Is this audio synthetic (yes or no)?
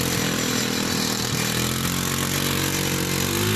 no